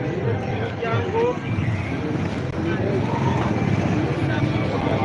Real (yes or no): yes